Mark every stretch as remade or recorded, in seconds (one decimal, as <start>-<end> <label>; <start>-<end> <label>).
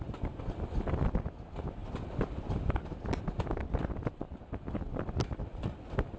0.0-1.8 recorded; 1.8-4.9 remade; 4.9-6.2 recorded